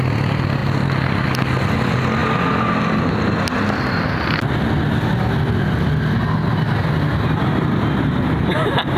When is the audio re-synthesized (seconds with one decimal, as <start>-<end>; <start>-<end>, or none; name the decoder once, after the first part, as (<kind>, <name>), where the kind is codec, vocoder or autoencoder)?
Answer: none